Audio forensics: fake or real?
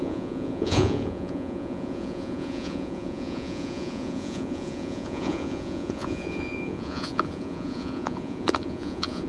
fake